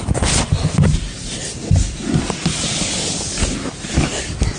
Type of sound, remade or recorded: recorded